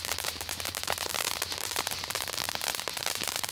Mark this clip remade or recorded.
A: remade